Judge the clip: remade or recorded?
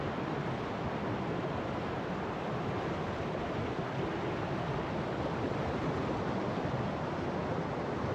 recorded